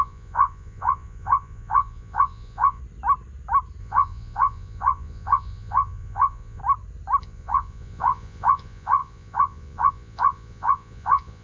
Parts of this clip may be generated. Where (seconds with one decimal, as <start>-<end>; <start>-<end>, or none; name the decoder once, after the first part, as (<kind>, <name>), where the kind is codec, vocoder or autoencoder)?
0.0-2.8 (vocoder, Vocos); 3.8-6.6; 7.2-11.4